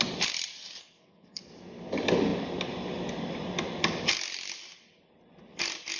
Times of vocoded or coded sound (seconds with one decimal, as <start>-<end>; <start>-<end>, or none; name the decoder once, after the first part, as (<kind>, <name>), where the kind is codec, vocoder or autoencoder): 0.8-1.5 (codec, SNAC)